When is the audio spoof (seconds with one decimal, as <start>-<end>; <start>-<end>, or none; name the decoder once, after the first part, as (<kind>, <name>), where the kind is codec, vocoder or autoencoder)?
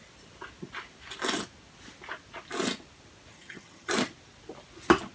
3.3-3.9 (vocoder, HiFi-GAN)